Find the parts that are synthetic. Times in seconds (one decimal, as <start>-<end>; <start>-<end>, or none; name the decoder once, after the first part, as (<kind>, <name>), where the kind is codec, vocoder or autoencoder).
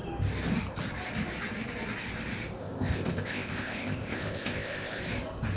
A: 2.6-5.0 (codec, ZipCodec)